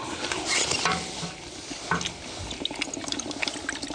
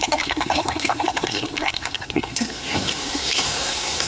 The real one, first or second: first